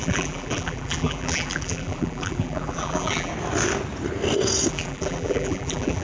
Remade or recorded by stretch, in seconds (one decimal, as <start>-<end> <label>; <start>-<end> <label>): 0.0-3.3 remade; 3.3-4.7 recorded; 4.7-6.0 remade